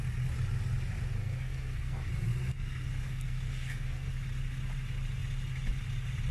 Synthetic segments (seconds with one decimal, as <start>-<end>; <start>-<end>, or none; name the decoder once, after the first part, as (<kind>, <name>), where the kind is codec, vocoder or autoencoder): 1.2-2.1 (codec, SNAC); 2.5-4.1